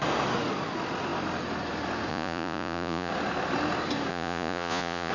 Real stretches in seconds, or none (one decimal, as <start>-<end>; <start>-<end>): 0.0-2.1; 3.1-4.1